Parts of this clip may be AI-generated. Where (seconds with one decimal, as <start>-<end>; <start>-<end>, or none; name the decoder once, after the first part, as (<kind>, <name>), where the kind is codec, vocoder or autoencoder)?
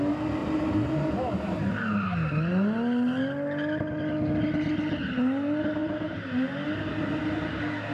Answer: 0.4-1.7 (vocoder, BigVGAN v2); 5.8-6.3